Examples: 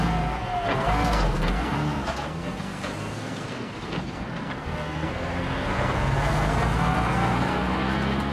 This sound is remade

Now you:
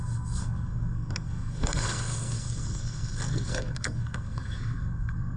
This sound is remade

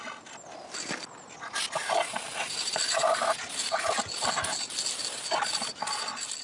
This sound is recorded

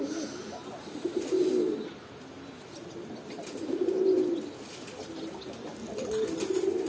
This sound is recorded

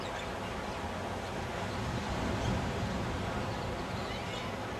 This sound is recorded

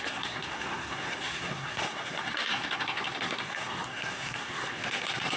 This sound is remade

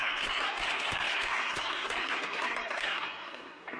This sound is remade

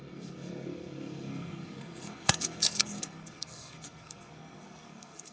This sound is remade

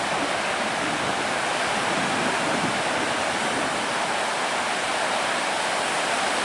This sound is recorded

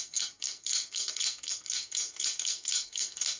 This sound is remade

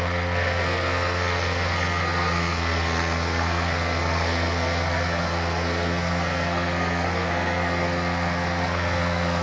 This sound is remade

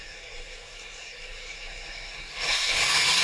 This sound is remade